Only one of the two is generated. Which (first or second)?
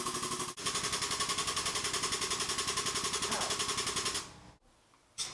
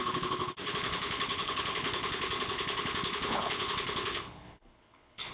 second